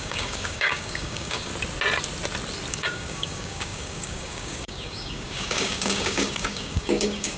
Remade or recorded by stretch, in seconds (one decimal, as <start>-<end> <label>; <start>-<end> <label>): 0.0-1.5 remade; 1.5-2.7 recorded; 2.7-7.4 remade